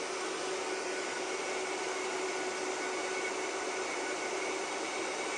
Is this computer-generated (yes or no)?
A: no